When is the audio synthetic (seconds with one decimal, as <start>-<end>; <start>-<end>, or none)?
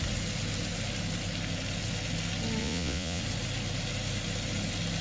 2.6-3.2